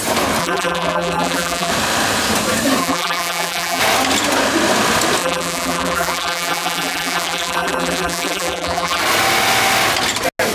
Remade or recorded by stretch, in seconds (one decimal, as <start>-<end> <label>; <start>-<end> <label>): 0.0-0.4 recorded; 0.4-1.7 remade; 1.7-2.8 recorded; 2.8-3.8 remade; 3.8-5.2 recorded; 5.2-9.0 remade; 9.0-10.5 recorded